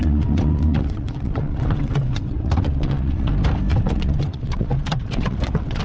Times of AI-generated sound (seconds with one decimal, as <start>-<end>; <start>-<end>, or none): 0.0-3.3; 3.7-5.8